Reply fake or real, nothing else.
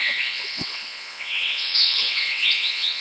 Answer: fake